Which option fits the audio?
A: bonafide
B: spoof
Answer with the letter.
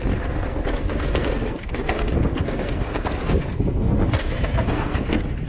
B